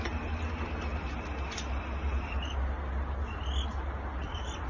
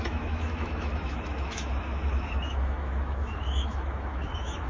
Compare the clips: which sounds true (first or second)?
first